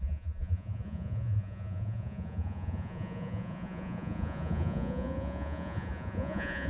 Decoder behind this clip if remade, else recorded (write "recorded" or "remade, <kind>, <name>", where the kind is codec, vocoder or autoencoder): remade, vocoder, Vocos